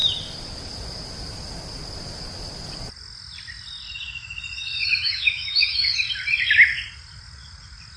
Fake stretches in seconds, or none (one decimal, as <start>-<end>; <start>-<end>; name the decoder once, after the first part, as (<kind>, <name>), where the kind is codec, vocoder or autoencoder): 5.0-5.7 (autoencoder, DAC-VAE)